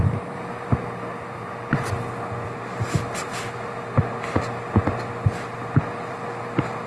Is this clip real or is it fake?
real